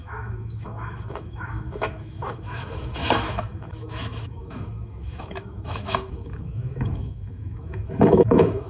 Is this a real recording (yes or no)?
no